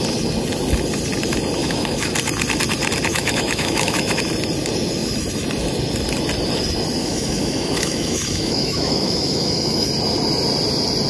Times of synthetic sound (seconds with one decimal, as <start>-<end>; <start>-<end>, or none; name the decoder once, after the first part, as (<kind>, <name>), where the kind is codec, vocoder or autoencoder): 1.6-2.1 (autoencoder, DAC-VAE); 3.1-4.3; 7.0-9.9